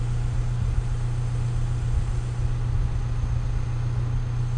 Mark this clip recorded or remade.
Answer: recorded